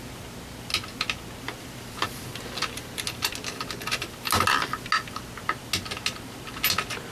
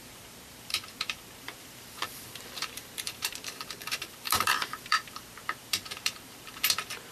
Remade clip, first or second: second